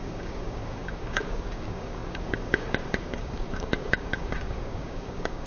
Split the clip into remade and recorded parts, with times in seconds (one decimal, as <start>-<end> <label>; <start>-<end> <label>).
0.0-5.5 remade